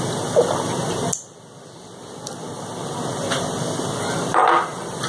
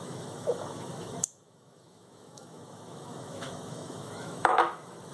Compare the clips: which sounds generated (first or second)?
second